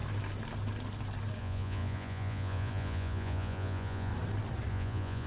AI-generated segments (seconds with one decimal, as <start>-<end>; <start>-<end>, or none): 1.4-4.1; 4.7-5.3